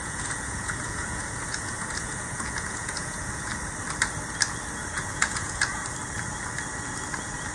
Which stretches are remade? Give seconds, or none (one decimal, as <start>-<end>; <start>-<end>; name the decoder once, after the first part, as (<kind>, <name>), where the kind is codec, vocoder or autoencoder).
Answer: 0.0-3.5 (vocoder, Vocos); 4.9-5.8